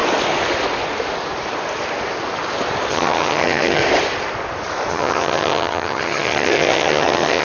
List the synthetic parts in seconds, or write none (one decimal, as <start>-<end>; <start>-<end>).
2.9-3.8; 4.9-7.4